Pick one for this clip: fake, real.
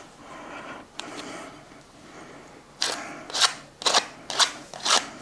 real